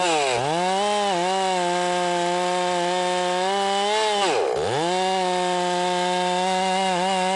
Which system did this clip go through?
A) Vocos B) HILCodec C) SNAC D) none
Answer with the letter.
D